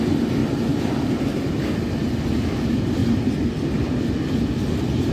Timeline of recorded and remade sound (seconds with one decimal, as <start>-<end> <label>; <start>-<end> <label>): 0.0-5.1 recorded